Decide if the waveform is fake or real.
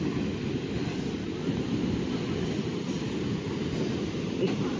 real